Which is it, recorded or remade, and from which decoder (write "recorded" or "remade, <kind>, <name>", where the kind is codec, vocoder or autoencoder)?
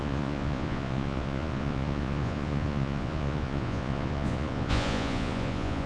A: remade, vocoder, Vocos